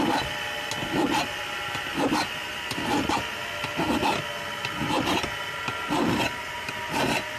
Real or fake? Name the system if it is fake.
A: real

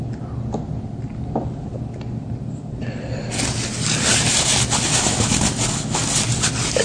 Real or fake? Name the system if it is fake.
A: real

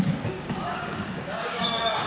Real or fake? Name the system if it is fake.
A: fake, codec, DAC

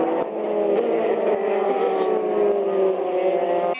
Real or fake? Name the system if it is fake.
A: real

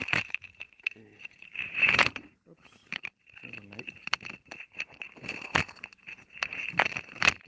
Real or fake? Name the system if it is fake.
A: fake, vocoder, BigVGAN v2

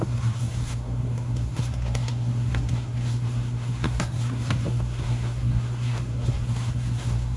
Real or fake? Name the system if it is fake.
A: fake, codec, SNAC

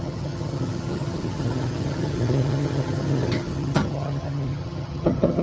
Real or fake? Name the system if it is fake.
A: fake, vocoder, HiFi-GAN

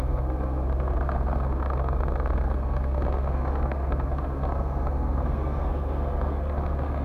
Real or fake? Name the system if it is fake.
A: fake, codec, SNAC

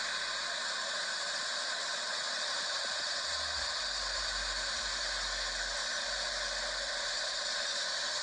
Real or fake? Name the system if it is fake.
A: real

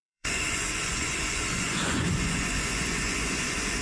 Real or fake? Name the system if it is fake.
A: fake, vocoder, Vocos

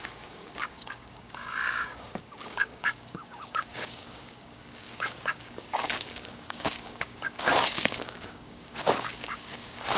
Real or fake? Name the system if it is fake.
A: fake, codec, DAC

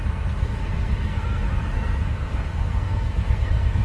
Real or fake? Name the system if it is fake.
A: fake, codec, SNAC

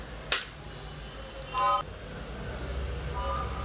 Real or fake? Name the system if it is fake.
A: real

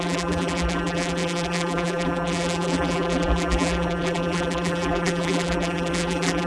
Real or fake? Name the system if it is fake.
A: fake, vocoder, BigVGAN v2